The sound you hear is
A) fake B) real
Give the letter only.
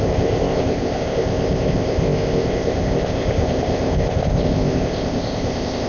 A